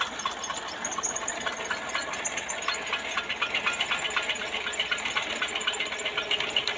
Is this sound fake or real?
real